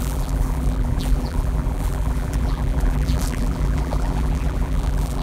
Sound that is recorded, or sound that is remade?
remade